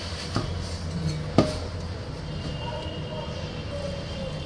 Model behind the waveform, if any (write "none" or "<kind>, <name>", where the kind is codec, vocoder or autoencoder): none